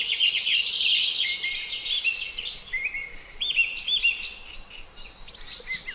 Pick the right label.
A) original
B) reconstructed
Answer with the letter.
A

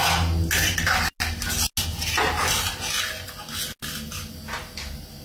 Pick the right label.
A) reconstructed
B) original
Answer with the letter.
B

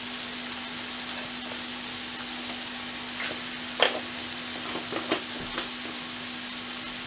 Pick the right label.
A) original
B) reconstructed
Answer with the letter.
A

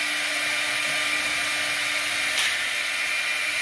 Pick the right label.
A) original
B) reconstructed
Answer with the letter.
A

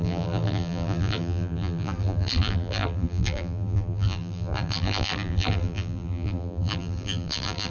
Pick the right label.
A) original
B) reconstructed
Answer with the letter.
B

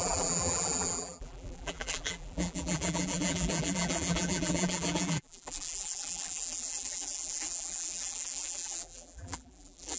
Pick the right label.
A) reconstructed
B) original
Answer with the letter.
A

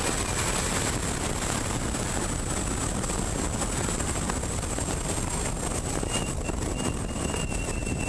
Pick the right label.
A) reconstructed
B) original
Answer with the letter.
B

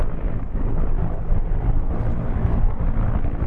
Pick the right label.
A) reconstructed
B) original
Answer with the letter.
B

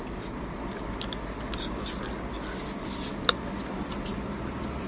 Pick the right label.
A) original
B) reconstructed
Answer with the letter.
A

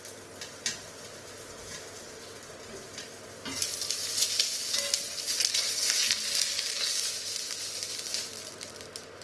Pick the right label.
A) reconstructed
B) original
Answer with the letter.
B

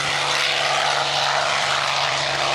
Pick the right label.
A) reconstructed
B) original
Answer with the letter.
A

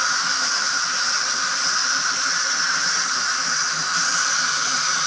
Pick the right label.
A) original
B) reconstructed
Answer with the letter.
B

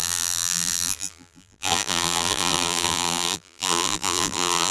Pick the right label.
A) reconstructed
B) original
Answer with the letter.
A